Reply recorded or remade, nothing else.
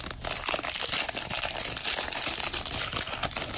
recorded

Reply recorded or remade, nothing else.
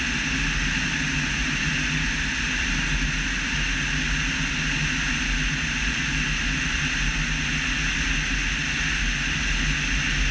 recorded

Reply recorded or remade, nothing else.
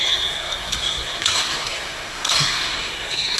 remade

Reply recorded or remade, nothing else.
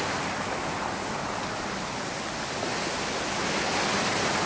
recorded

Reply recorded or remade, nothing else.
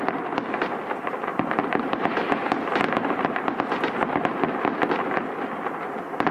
recorded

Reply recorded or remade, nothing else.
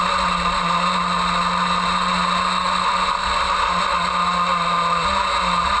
recorded